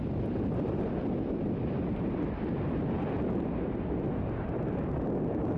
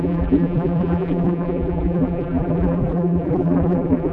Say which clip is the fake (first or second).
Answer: second